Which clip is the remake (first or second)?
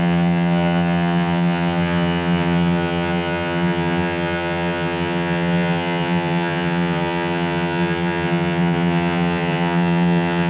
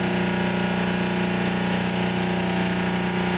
first